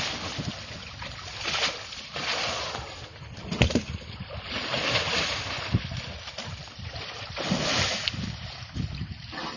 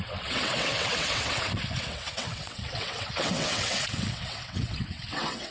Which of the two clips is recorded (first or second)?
first